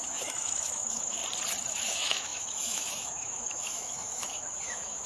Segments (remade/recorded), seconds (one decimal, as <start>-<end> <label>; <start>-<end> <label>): 0.0-1.2 remade; 1.2-1.7 recorded; 1.7-5.1 remade